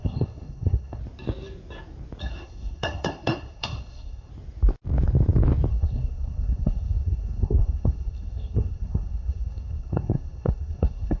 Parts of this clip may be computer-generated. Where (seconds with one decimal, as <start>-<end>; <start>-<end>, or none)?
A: 0.0-1.0; 2.2-4.3; 5.7-11.2